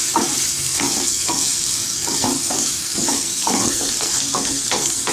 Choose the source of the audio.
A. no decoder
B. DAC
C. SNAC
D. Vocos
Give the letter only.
C